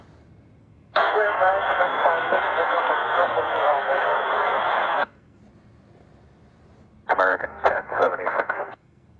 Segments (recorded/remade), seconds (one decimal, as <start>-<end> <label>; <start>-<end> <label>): 0.0-0.6 recorded; 0.6-5.4 remade; 5.4-7.3 recorded; 7.3-9.2 remade